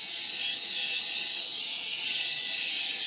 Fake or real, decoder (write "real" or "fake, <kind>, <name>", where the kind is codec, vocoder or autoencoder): fake, vocoder, HiFi-GAN